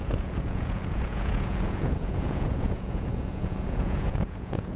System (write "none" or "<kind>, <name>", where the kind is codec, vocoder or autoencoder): vocoder, Vocos